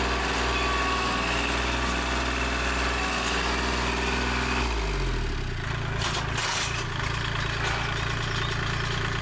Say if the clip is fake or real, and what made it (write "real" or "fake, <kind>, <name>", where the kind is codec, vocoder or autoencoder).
real